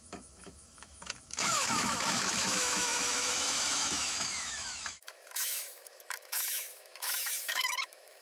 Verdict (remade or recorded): remade